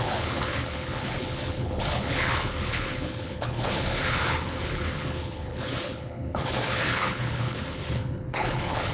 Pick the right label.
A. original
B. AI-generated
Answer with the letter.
B